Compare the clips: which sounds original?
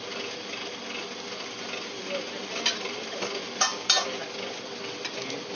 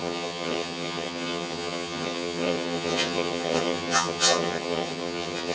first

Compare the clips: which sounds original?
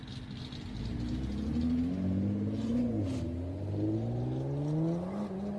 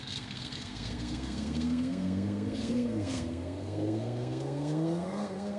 first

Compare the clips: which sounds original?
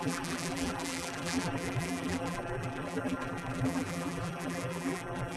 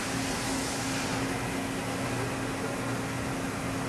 second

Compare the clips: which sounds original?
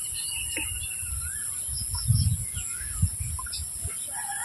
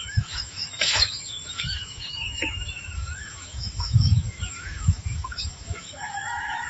first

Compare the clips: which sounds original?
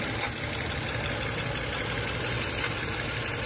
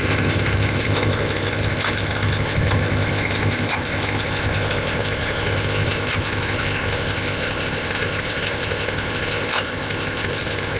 first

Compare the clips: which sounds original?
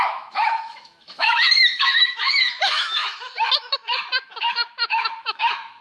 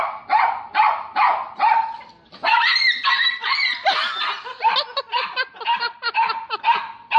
second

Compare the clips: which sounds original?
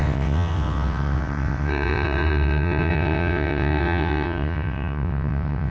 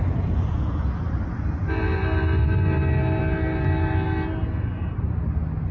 second